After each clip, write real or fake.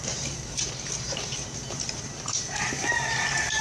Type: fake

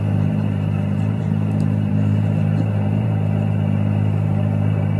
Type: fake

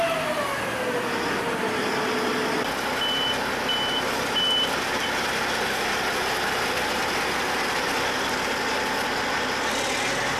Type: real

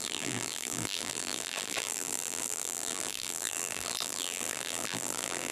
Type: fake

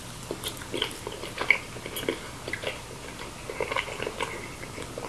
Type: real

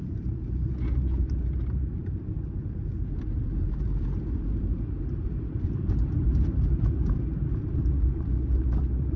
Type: fake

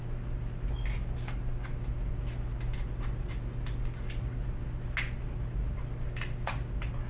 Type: real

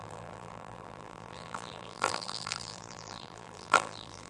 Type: fake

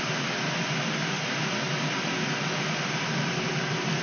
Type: fake